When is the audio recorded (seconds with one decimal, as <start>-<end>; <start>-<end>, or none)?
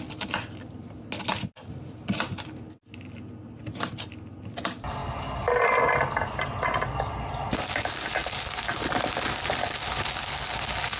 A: 0.0-11.0